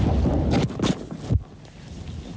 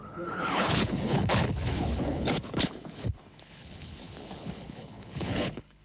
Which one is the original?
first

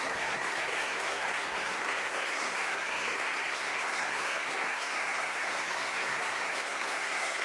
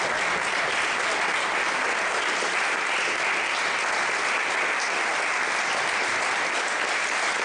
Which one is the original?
second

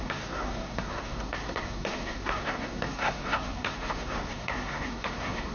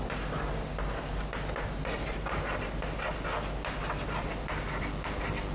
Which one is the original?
second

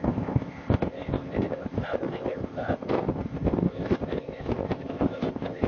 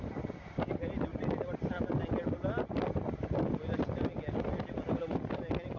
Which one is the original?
second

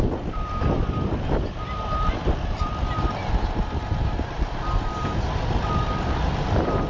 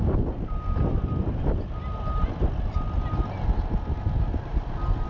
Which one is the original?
second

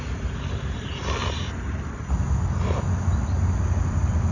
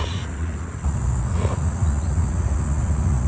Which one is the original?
first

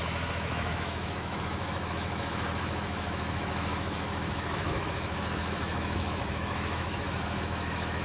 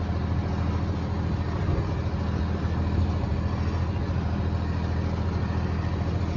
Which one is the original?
second